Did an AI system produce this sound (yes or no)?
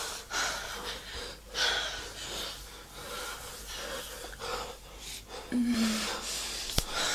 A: no